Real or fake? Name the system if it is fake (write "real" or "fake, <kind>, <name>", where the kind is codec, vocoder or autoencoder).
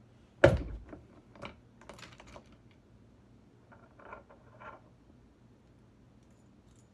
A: real